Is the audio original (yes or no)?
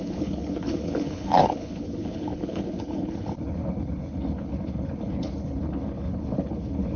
no